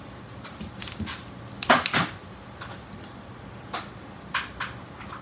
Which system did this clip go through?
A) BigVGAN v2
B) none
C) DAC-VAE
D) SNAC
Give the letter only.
B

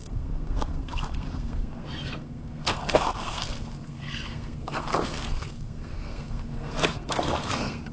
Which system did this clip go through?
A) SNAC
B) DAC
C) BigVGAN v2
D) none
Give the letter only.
A